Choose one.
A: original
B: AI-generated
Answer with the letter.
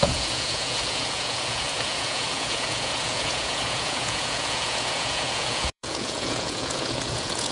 B